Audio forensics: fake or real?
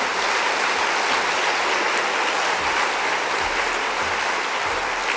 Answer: real